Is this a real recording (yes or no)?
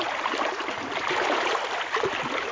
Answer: yes